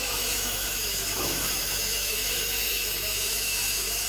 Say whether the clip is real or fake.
fake